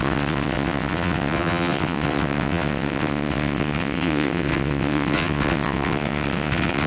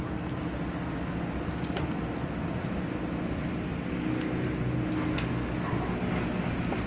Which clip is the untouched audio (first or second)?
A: second